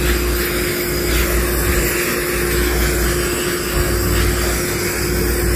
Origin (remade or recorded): recorded